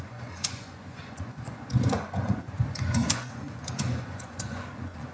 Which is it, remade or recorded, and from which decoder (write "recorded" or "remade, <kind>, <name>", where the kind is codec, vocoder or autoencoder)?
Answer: remade, vocoder, Vocos